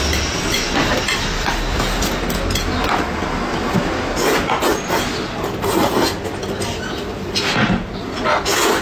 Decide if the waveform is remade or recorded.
recorded